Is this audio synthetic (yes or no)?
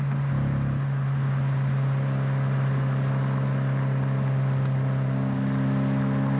no